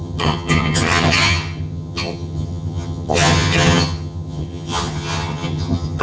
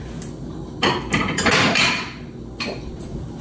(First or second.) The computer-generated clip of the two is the first